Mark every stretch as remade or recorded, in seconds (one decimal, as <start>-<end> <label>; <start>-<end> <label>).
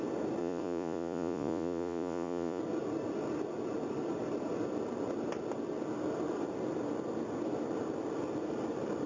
0.0-0.4 recorded; 0.4-2.6 remade; 2.6-9.1 recorded